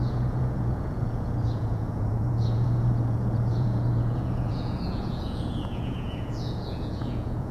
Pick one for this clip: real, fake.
fake